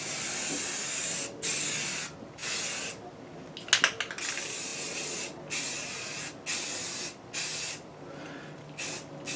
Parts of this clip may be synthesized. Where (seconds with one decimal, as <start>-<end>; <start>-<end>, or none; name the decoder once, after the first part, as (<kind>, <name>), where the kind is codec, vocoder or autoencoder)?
none